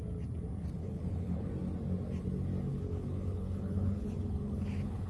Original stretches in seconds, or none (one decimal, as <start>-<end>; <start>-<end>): 0.0-0.8; 1.5-2.7